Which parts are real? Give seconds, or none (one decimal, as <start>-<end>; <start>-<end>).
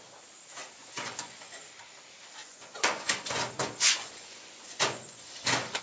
0.0-0.8; 1.6-2.4